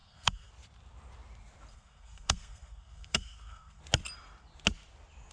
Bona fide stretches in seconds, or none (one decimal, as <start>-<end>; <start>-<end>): 0.5-1.7; 3.8-5.3